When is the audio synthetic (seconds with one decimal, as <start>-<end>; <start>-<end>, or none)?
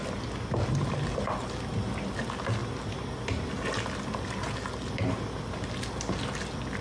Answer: none